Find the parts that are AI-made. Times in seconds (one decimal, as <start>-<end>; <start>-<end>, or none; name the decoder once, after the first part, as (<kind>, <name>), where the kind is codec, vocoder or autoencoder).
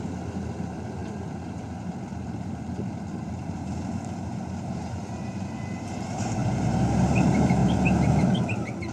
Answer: 0.0-6.4 (vocoder, BigVGAN v2); 7.1-7.6; 8.4-8.9